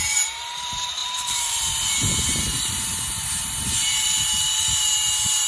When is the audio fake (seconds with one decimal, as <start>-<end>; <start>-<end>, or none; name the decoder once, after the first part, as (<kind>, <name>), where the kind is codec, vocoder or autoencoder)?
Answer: 0.0-5.5 (vocoder, BigVGAN v2)